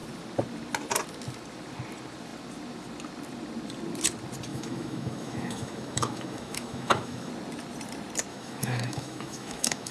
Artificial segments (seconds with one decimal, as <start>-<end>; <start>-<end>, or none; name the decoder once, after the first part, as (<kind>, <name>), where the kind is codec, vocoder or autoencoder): 4.5-7.3 (autoencoder, DAC-VAE); 8.3-9.9